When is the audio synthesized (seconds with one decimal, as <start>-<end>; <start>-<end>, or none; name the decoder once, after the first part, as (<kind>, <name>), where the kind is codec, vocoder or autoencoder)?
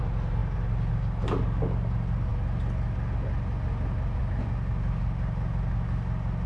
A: none